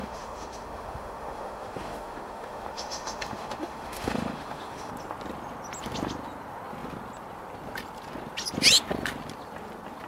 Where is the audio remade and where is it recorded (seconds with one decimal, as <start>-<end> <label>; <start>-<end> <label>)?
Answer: 0.0-4.9 remade; 4.9-10.1 recorded